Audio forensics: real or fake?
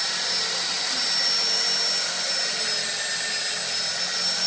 real